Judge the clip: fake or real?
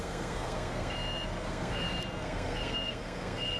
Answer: fake